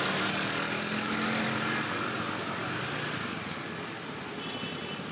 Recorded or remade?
recorded